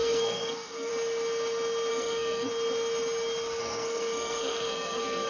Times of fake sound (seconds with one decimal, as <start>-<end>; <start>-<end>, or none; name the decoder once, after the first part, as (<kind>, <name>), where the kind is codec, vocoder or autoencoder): 0.0-0.9 (codec, SNAC); 1.9-2.5; 3.6-5.3